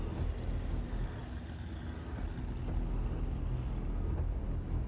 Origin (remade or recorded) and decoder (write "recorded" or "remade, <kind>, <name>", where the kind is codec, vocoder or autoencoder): recorded